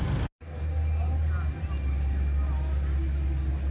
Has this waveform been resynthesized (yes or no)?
no